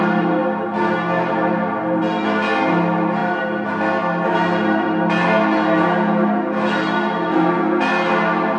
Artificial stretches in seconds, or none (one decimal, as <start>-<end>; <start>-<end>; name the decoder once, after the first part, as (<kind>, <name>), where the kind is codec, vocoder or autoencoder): none